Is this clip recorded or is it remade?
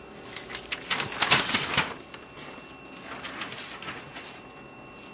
recorded